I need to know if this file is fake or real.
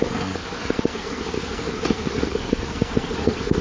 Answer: fake